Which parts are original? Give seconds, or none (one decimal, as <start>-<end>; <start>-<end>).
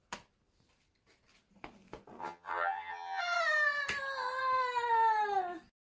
0.0-2.2; 3.2-5.9